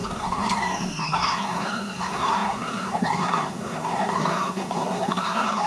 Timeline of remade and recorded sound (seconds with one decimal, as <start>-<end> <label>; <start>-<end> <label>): 0.0-5.7 remade

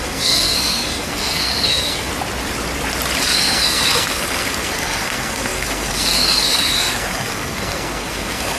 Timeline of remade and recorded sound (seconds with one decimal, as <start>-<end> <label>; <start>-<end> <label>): 0.0-2.1 remade; 2.1-3.2 recorded; 3.2-8.6 remade